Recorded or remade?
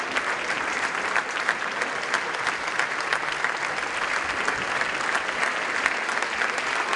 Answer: recorded